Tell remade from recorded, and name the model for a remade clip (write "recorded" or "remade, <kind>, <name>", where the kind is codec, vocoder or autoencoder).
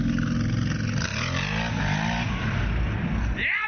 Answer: recorded